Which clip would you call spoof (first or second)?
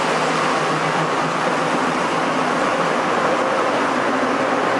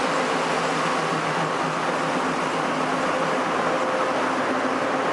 first